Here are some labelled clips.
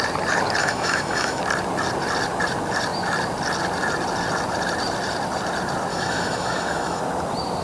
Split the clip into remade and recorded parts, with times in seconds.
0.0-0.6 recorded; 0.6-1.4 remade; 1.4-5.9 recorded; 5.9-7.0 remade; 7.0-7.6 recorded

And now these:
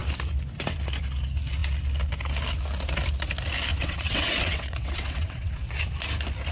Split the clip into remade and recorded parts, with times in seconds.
0.0-3.7 recorded; 3.7-5.5 remade; 5.5-6.5 recorded

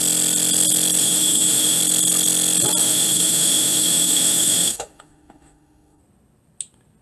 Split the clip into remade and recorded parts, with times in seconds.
0.0-1.0 recorded; 1.0-1.8 remade; 1.8-2.8 recorded; 2.8-6.0 remade; 6.0-7.0 recorded